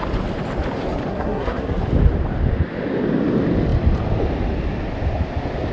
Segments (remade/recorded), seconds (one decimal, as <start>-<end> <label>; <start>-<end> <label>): 0.0-1.1 recorded; 1.1-1.8 remade; 1.8-5.7 recorded

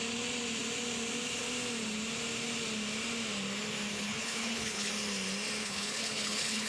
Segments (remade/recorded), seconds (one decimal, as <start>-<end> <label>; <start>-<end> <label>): 0.0-3.9 recorded; 3.9-4.9 remade; 4.9-5.6 recorded; 5.6-6.7 remade

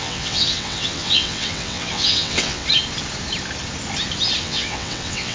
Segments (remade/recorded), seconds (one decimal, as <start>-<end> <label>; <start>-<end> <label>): 0.0-2.6 remade; 2.6-4.4 recorded; 4.4-5.3 remade

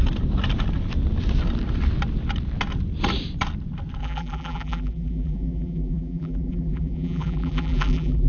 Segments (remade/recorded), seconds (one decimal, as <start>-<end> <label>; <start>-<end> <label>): 0.0-4.0 recorded; 4.0-8.3 remade

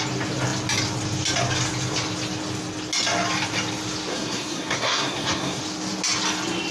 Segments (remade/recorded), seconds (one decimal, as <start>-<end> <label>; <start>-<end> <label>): 0.0-4.1 recorded; 4.1-5.6 remade; 5.6-6.7 recorded

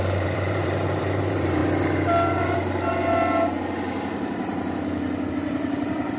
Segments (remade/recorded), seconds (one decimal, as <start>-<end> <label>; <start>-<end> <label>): 0.0-1.6 remade; 1.6-5.3 recorded; 5.3-6.2 remade